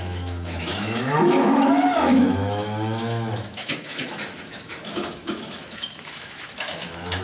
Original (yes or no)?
no